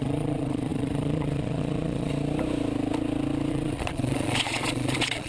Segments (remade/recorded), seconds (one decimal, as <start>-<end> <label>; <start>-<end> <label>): 0.0-2.1 remade; 2.1-3.5 recorded; 3.5-5.3 remade